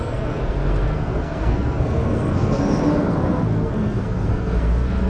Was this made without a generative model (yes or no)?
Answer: no